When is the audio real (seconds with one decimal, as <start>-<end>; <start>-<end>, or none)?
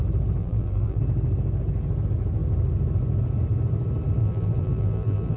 0.0-0.4; 1.0-4.2